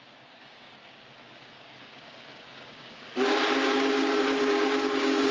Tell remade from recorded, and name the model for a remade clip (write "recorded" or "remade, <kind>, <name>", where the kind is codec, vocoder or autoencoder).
remade, codec, DAC